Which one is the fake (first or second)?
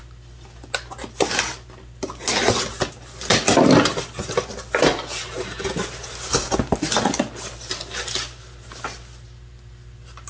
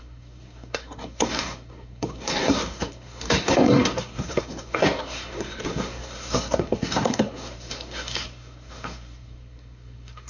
second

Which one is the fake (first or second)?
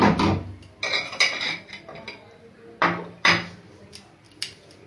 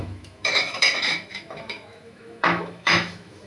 second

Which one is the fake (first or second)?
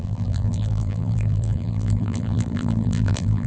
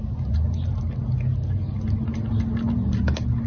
first